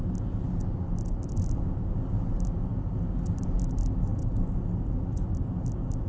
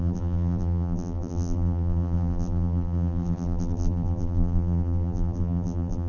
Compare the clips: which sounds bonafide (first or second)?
first